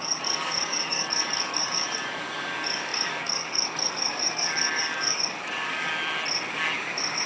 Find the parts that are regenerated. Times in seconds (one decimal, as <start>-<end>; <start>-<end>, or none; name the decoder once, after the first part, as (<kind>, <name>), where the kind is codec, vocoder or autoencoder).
0.0-5.9 (codec, DAC); 6.5-7.3